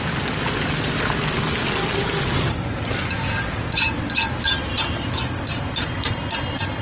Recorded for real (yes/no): yes